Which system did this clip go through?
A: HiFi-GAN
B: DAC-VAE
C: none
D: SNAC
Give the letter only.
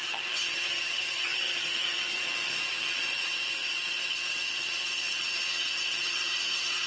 A